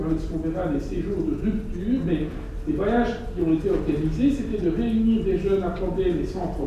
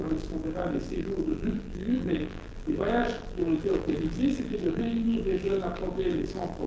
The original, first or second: first